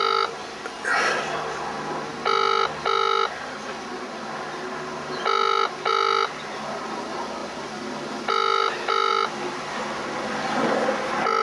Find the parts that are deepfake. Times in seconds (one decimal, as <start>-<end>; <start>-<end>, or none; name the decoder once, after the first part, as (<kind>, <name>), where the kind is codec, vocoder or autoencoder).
none